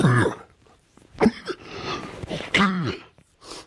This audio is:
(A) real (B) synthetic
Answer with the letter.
B